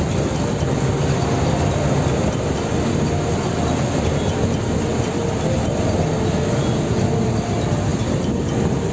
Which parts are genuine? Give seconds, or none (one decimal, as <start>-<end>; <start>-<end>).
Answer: 0.0-8.9